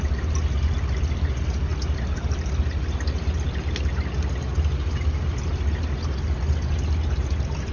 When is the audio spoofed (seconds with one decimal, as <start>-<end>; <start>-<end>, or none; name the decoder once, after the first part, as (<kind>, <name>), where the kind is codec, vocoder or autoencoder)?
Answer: none